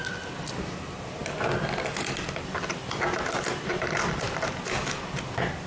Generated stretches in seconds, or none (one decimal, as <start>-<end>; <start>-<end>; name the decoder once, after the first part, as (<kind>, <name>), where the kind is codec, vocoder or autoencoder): none